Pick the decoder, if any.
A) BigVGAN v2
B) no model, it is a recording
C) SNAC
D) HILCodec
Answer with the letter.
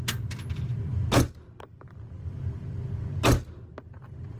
B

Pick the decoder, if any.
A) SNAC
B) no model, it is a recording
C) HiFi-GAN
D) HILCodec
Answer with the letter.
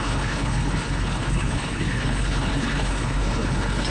D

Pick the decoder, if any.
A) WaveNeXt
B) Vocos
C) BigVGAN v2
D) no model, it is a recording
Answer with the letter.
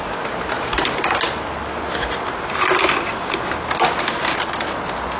D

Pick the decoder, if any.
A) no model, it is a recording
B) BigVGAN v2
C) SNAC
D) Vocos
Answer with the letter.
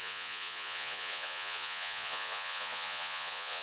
D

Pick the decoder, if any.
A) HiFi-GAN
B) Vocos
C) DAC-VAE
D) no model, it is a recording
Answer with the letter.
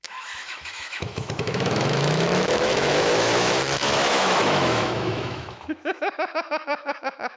C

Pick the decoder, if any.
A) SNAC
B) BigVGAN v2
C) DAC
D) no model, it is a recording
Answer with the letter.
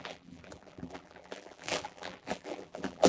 B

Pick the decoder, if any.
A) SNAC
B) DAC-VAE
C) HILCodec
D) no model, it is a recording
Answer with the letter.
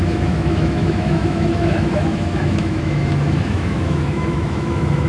B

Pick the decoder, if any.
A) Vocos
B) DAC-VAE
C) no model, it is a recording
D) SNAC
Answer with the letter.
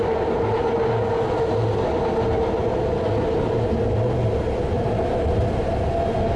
C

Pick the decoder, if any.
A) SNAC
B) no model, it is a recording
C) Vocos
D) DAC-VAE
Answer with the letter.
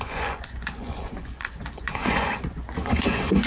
C